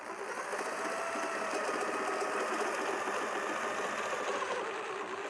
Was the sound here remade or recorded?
recorded